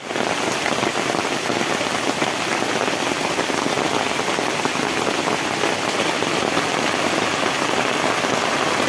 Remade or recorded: recorded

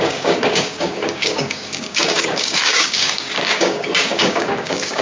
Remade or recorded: remade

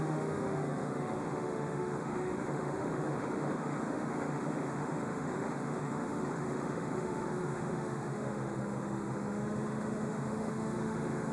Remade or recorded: remade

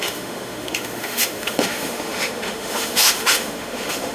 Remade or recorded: remade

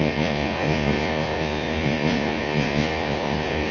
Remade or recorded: remade